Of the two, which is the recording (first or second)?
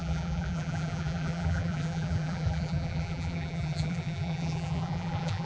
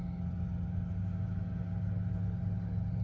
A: second